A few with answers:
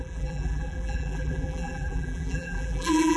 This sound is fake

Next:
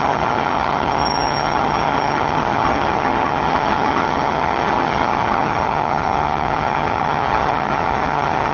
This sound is fake